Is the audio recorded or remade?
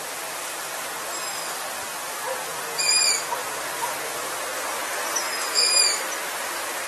recorded